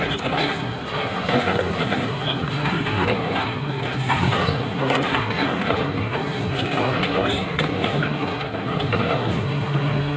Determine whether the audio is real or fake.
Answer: fake